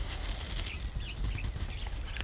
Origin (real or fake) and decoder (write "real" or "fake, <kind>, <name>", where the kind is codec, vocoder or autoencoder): real